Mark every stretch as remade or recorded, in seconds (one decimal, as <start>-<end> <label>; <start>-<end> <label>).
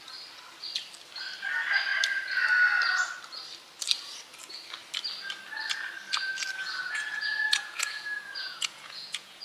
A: 0.0-6.8 recorded; 6.8-9.4 remade